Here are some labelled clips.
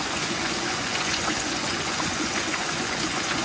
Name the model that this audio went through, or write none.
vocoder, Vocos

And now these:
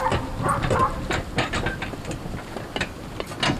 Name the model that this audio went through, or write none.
none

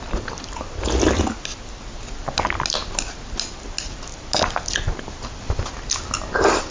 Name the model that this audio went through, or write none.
none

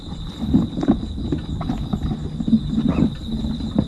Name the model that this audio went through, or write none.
none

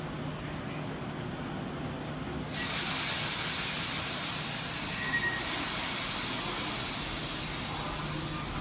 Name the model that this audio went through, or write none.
none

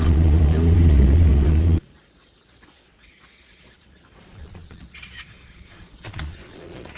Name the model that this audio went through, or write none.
vocoder, Vocos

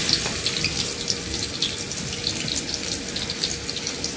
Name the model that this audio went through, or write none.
none